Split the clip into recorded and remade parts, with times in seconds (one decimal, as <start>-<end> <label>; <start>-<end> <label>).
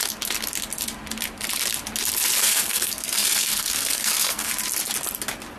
0.0-2.4 recorded; 2.4-4.5 remade; 4.5-5.6 recorded